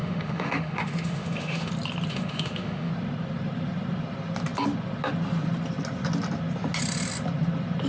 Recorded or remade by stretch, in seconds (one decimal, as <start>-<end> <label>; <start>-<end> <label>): 0.0-1.7 remade; 1.7-2.1 recorded; 2.1-2.9 remade; 2.9-7.9 recorded